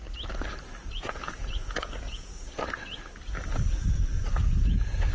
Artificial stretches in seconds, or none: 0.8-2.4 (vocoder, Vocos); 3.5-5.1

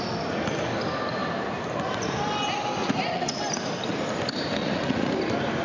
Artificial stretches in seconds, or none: 2.8-3.3 (vocoder, Vocos); 4.6-5.1

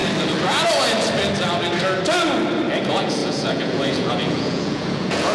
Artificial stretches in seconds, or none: 2.8-5.3 (vocoder, Vocos)